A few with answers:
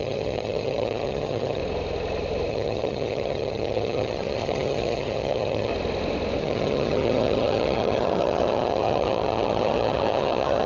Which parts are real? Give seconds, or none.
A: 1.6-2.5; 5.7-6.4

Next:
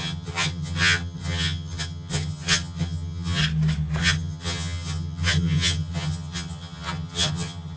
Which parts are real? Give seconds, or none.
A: 3.4-4.0